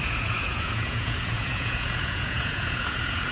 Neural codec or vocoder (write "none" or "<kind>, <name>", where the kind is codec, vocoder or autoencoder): vocoder, Vocos